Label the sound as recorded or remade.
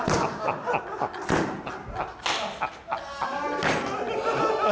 recorded